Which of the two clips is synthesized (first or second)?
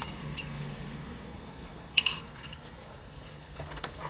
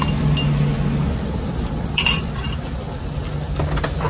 first